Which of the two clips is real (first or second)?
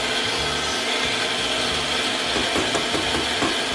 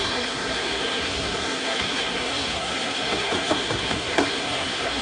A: first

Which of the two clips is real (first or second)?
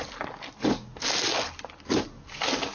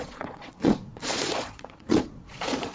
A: first